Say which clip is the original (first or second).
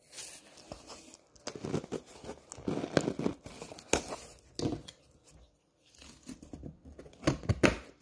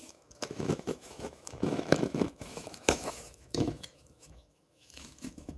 first